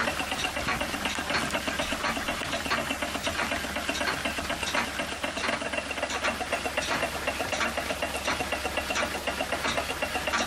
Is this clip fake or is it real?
real